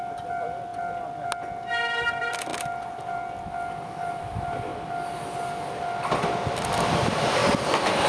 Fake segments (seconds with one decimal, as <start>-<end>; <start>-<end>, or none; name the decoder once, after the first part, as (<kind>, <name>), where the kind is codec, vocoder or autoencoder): 0.0-0.7 (vocoder, BigVGAN v2); 2.0-2.5; 4.1-4.7; 6.0-7.4